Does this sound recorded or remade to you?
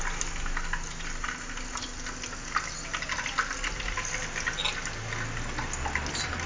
recorded